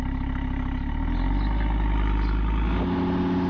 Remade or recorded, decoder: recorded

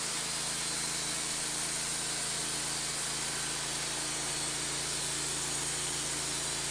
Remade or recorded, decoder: recorded